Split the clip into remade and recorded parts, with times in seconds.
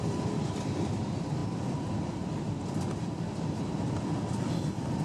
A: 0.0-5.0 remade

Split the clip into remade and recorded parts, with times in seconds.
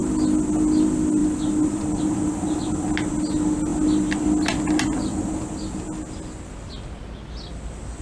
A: 0.0-8.0 recorded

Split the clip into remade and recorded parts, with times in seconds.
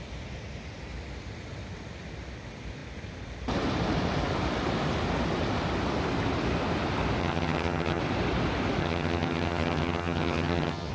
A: 0.0-7.2 recorded; 7.2-8.0 remade; 8.0-8.8 recorded; 8.8-10.9 remade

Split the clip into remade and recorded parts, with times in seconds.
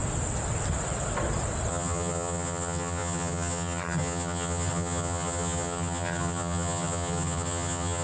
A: 0.0-1.7 recorded; 1.7-8.0 remade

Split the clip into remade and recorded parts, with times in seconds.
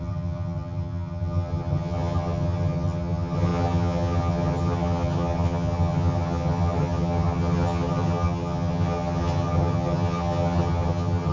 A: 0.0-11.3 remade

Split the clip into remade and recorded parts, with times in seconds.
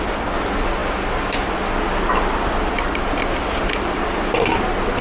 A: 0.0-5.0 recorded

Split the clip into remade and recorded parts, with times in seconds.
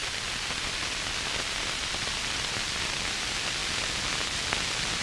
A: 0.0-2.8 remade; 2.8-5.0 recorded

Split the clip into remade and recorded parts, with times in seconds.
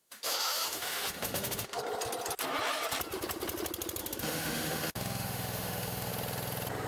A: 0.0-1.8 remade; 1.8-4.0 recorded; 4.0-6.1 remade; 6.1-6.9 recorded